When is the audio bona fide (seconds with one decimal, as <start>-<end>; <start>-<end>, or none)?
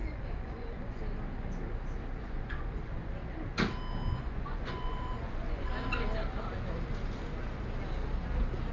1.0-2.2; 3.1-4.1; 5.7-8.7